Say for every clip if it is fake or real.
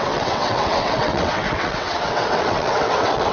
fake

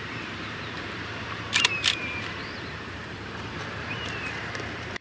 fake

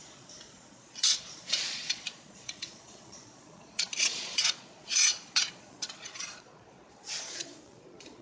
fake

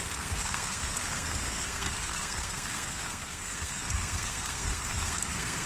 fake